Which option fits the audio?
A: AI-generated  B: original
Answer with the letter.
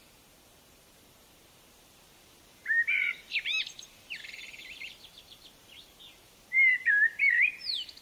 A